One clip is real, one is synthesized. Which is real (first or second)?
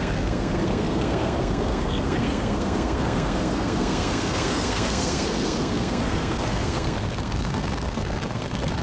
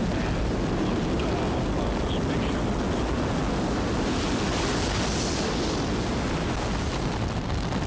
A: second